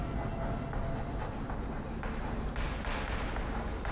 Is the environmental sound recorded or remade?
recorded